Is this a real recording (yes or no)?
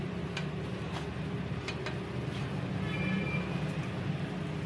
yes